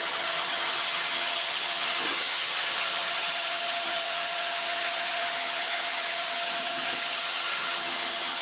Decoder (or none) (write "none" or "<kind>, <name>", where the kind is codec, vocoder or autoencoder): vocoder, HiFi-GAN